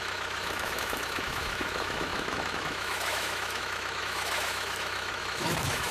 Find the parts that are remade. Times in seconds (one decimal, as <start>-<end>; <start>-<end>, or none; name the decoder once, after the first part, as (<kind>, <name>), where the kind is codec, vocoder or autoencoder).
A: 0.0-5.9 (autoencoder, DAC-VAE)